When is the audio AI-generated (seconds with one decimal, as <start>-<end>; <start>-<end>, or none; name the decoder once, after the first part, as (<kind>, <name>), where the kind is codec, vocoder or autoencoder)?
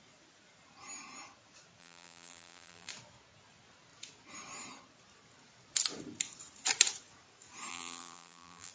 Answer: 1.8-2.9 (vocoder, BigVGAN v2); 7.7-8.7